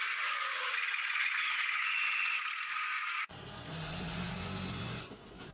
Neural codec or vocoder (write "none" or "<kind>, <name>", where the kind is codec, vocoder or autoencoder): vocoder, Vocos